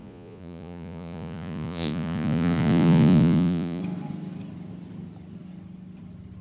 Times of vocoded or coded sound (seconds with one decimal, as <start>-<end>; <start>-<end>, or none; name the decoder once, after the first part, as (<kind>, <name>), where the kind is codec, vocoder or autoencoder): 0.0-3.8 (vocoder, Vocos)